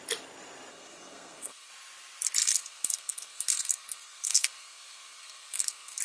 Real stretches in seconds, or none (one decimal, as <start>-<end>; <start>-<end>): 0.0-0.7; 1.7-2.4